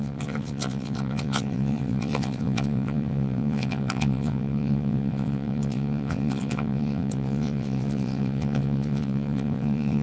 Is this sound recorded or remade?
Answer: remade